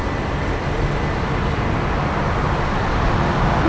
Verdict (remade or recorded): recorded